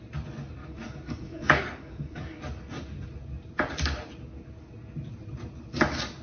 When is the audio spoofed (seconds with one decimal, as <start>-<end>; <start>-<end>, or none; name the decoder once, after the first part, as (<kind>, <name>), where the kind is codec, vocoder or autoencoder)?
0.6-2.4 (codec, DAC)